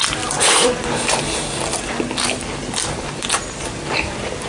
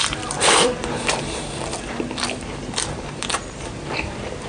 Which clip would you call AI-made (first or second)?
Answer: second